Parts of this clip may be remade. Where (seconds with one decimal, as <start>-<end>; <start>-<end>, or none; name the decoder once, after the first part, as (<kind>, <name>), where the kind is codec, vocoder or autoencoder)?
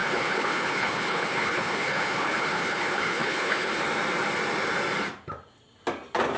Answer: 0.0-3.8 (codec, HILCodec)